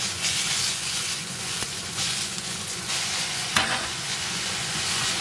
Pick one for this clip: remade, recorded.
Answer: remade